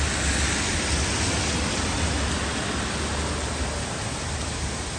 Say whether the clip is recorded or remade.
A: recorded